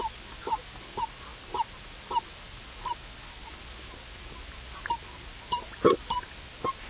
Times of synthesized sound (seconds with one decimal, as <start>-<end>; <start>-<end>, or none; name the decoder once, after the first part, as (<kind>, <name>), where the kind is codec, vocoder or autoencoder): 0.0-6.9 (vocoder, BigVGAN v2)